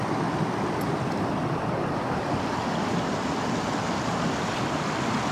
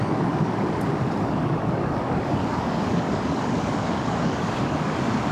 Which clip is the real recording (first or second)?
first